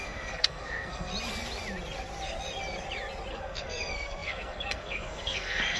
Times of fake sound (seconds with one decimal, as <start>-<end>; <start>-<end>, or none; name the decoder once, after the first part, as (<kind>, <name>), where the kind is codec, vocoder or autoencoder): 0.0-1.1 (codec, SNAC); 3.3-5.8